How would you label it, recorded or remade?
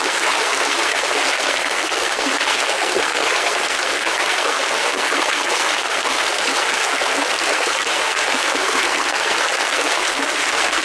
remade